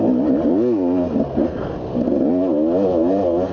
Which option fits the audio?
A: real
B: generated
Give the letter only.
A